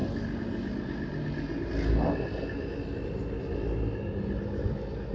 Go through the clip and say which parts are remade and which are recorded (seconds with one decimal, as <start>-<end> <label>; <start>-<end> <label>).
0.0-5.1 recorded